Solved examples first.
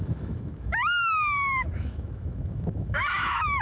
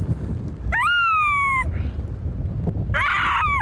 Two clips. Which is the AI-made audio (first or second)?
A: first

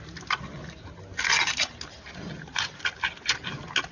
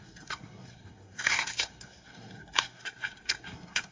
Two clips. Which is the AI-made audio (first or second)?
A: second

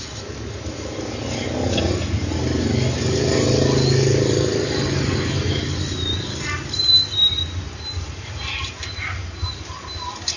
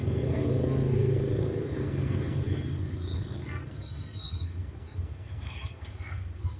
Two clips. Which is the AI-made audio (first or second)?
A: second